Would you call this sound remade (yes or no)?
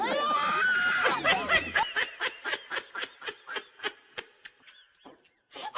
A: no